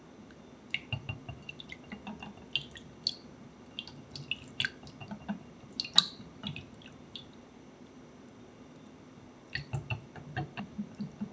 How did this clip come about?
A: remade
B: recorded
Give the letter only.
B